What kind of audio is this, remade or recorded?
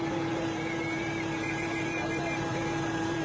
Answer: remade